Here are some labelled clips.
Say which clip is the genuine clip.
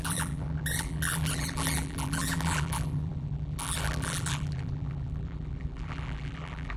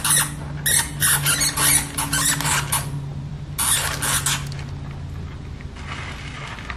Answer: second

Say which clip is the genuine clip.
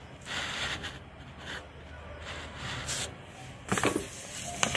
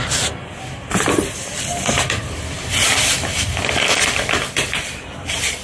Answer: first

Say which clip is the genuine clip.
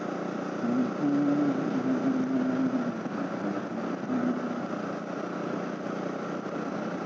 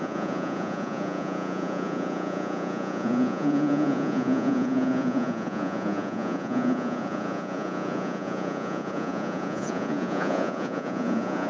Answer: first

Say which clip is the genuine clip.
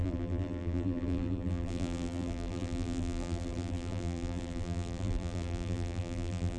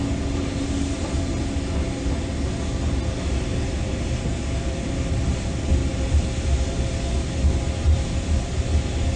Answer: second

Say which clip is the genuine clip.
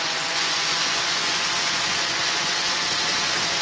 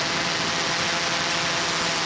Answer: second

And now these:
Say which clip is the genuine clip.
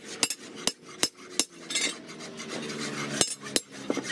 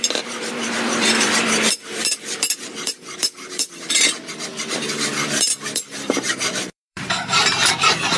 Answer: first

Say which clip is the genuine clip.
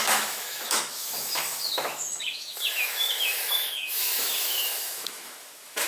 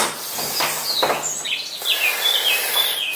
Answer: second